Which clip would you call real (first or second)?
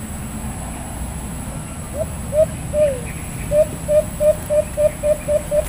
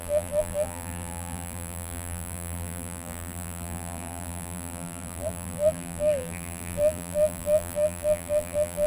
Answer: first